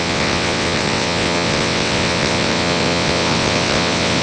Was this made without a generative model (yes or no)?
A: no